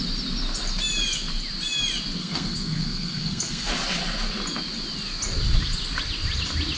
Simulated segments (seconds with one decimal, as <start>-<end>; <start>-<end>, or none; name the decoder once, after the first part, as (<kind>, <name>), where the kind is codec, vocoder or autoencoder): 2.2-3.7 (codec, SNAC)